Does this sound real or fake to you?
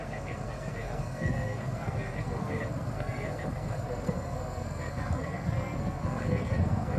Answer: fake